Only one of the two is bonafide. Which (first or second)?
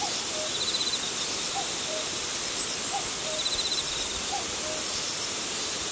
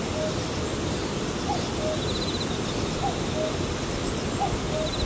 second